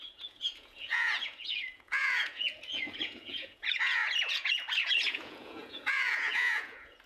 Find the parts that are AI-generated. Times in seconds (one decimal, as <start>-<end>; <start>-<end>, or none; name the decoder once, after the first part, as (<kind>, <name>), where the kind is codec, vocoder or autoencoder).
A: 0.0-7.1 (vocoder, Vocos)